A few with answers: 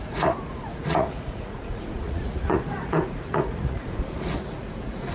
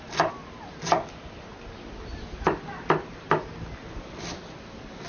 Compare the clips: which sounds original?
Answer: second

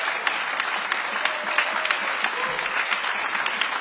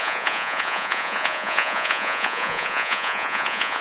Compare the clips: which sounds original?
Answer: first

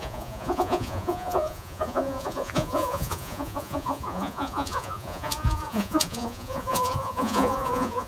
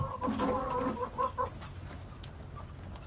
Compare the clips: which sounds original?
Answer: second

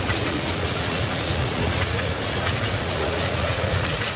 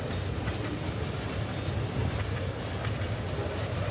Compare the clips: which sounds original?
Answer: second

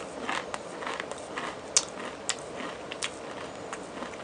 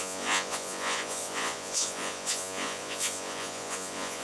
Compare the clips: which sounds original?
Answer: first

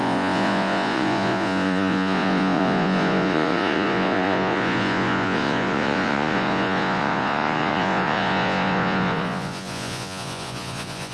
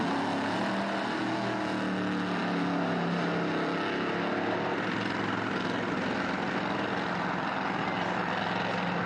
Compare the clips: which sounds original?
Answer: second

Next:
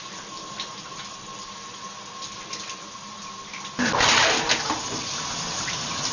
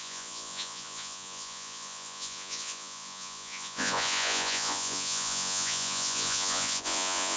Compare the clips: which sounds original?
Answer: first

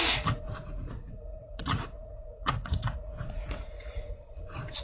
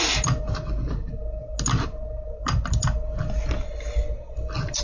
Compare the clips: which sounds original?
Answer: second